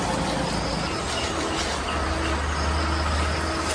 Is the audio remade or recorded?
recorded